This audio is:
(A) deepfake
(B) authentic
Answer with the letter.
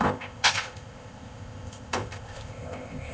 A